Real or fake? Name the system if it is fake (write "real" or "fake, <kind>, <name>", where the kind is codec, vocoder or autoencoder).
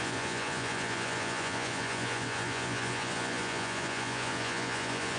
fake, vocoder, Vocos